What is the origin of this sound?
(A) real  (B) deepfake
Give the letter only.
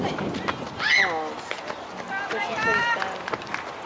A